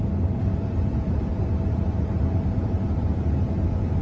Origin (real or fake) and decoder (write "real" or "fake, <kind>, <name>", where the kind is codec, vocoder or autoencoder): fake, vocoder, BigVGAN v2